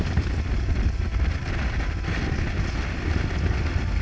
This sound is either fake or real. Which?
real